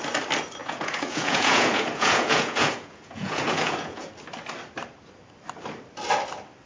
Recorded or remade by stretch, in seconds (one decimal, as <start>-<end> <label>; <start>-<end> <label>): 0.0-0.6 recorded; 0.6-4.1 remade; 4.1-6.7 recorded